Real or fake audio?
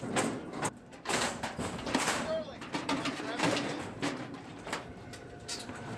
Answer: fake